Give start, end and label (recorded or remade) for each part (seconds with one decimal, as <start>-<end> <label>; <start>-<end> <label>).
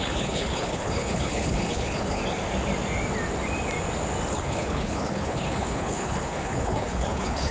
0.0-2.2 remade; 2.2-4.3 recorded; 4.3-7.5 remade